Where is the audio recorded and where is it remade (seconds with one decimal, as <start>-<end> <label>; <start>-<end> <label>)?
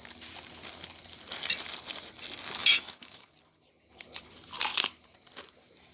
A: 0.0-2.6 recorded; 2.6-3.3 remade; 3.3-5.9 recorded